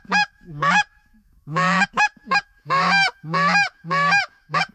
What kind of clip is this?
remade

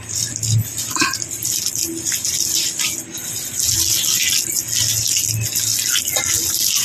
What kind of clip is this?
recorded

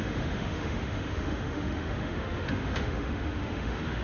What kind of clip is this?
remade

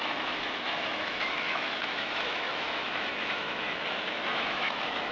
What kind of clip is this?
remade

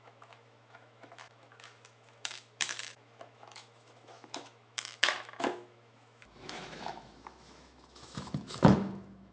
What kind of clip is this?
remade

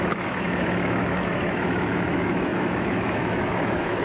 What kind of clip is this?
remade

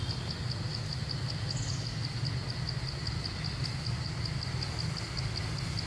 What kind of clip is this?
recorded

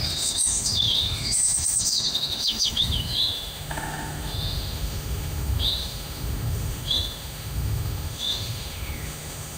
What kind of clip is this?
remade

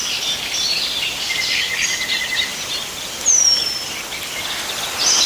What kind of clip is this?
recorded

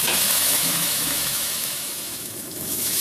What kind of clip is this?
remade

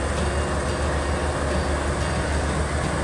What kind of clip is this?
recorded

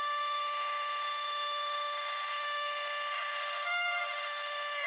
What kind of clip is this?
remade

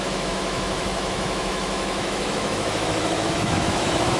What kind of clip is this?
remade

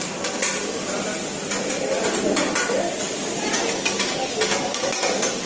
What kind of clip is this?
recorded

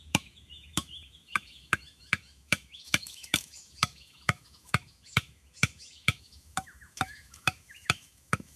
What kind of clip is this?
remade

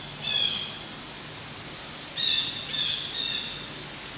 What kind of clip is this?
recorded